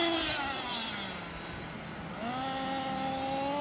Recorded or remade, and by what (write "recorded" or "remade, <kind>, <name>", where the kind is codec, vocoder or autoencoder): recorded